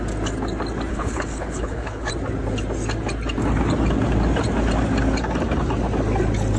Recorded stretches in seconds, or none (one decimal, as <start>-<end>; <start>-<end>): 0.0-0.9; 2.1-6.6